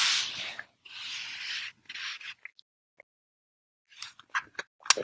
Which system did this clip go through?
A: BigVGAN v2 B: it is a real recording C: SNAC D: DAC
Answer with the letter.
B